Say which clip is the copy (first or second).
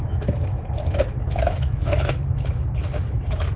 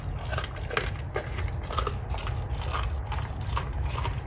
first